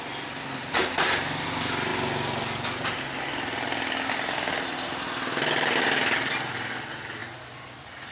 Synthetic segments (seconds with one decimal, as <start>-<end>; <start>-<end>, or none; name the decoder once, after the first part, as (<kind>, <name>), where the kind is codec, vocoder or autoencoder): 0.0-1.9 (vocoder, BigVGAN v2); 5.8-7.2